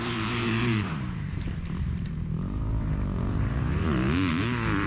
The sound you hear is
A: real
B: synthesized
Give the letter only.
B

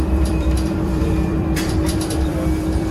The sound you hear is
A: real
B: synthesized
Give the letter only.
B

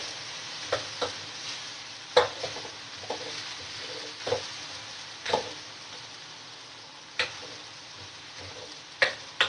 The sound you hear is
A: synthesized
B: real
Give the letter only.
B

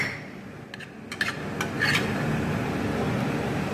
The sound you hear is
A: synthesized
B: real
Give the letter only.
B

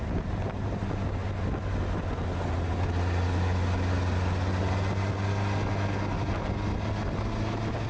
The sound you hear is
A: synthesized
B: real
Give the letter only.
B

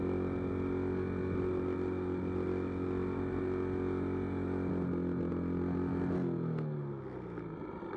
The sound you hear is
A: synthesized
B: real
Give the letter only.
B